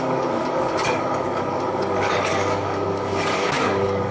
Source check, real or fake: fake